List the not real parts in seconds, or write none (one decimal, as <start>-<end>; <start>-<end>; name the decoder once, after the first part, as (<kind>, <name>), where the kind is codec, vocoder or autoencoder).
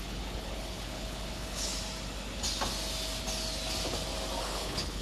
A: 0.0-1.7 (codec, HILCodec); 4.4-5.0